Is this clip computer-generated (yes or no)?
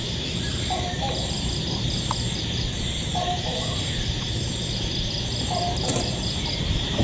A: yes